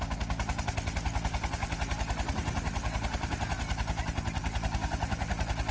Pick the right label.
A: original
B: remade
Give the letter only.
A